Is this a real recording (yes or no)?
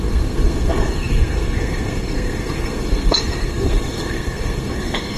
no